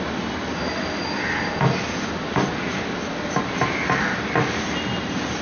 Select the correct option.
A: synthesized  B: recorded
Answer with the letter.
B